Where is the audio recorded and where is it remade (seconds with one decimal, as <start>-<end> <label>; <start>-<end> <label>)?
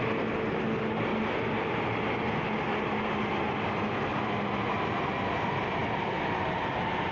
0.0-7.1 recorded